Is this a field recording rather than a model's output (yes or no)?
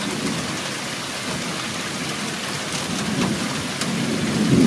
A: yes